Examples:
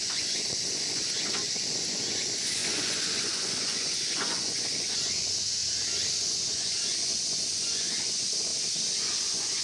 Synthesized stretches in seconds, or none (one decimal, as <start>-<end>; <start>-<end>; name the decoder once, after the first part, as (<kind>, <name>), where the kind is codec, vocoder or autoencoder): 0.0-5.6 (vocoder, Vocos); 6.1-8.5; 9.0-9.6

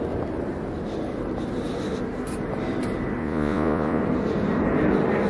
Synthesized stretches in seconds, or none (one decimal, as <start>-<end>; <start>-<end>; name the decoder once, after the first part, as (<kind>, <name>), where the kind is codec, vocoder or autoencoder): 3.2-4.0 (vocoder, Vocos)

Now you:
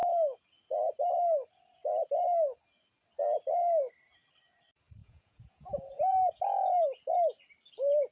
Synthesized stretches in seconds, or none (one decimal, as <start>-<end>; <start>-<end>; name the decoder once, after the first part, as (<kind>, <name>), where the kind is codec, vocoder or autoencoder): 5.0-6.4 (vocoder, Vocos)

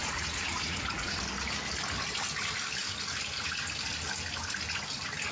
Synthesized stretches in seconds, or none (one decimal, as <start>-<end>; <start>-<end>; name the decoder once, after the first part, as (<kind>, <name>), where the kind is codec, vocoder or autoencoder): 0.0-1.2 (vocoder, Vocos)